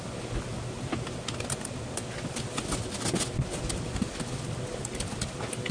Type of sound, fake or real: real